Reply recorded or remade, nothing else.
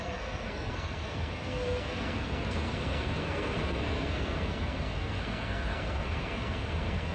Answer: remade